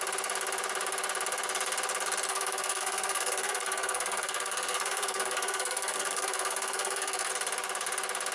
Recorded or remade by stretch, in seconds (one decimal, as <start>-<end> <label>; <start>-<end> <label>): 0.0-2.3 recorded; 2.3-7.3 remade; 7.3-8.3 recorded